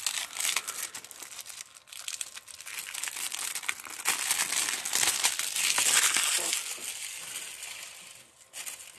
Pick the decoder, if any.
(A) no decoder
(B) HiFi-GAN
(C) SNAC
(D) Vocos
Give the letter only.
A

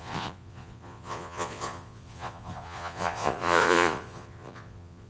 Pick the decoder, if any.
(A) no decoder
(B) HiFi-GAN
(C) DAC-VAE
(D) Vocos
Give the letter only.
D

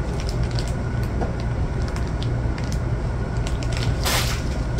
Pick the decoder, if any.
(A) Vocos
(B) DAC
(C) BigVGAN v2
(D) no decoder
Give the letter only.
D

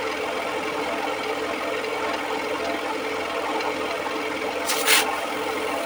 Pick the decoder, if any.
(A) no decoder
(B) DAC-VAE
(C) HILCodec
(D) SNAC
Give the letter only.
A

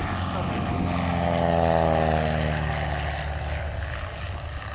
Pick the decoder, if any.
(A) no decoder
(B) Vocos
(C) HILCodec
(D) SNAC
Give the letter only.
A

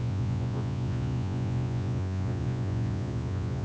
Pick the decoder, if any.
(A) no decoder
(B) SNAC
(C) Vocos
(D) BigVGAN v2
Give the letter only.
C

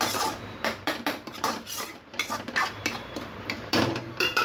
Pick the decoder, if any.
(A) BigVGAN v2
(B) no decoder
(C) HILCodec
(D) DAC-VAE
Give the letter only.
A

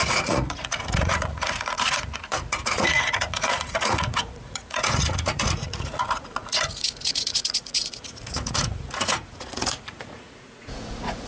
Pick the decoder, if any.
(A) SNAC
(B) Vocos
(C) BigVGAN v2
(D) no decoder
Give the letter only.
B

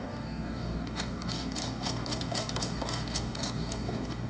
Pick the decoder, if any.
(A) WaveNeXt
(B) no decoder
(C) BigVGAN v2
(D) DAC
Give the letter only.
D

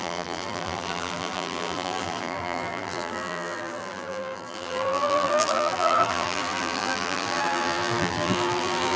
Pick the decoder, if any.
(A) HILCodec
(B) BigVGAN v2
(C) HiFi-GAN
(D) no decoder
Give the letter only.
B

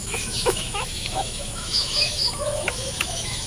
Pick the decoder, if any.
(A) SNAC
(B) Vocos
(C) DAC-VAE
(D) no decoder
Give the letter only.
C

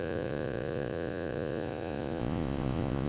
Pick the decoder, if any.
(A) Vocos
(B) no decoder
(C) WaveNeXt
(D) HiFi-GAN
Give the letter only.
A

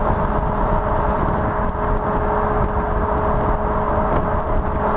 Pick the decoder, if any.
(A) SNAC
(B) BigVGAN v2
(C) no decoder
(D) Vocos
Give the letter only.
C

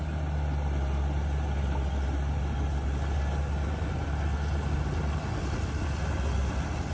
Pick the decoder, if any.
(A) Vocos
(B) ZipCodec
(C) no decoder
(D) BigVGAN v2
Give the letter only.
C